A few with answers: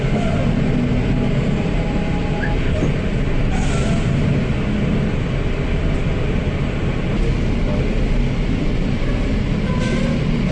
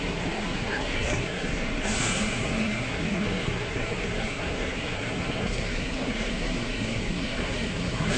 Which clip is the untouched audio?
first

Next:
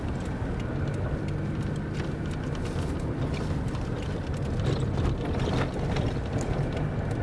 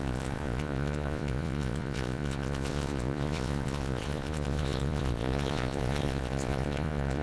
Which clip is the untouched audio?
first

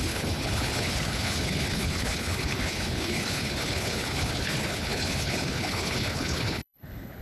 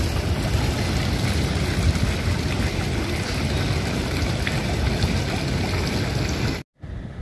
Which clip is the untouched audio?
second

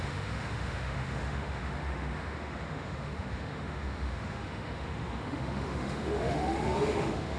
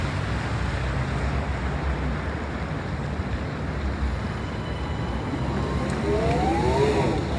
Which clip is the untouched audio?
second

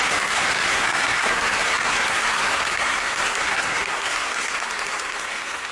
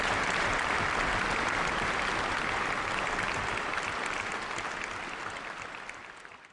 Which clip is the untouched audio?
second